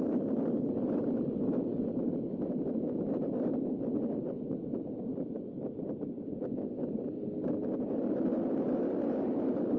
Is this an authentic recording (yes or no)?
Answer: yes